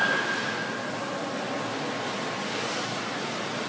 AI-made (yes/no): no